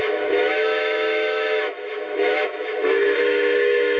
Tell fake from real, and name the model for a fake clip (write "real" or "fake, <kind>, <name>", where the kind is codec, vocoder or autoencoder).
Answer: fake, autoencoder, DAC-VAE